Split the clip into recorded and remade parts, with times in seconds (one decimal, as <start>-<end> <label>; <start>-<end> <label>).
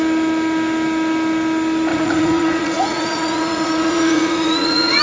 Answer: 0.0-1.9 recorded; 1.9-5.0 remade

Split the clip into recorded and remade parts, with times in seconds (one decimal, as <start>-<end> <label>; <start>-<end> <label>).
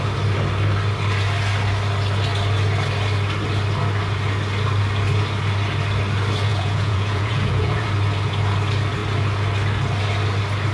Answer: 0.0-6.5 recorded; 6.5-7.9 remade; 7.9-10.7 recorded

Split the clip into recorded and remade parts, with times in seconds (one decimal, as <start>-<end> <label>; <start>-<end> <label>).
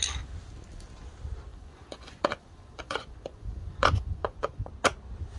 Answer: 0.0-1.5 recorded; 1.5-4.7 remade; 4.7-5.4 recorded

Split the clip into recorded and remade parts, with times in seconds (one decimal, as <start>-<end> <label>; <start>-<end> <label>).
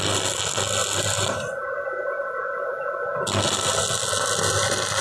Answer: 0.0-5.0 recorded